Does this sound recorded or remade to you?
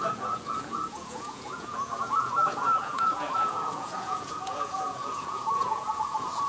remade